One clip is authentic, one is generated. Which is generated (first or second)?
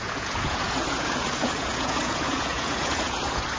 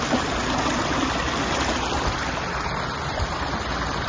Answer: first